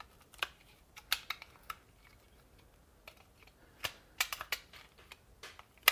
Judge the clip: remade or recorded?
recorded